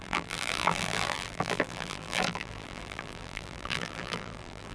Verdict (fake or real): fake